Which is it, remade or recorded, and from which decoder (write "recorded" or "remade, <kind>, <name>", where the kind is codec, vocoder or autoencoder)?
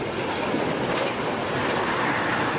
recorded